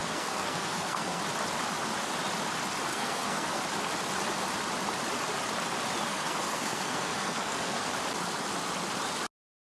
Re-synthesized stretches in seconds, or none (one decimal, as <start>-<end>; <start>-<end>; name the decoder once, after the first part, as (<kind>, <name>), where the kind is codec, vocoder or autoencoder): 0.0-1.2 (codec, SNAC); 2.9-3.6; 6.1-7.9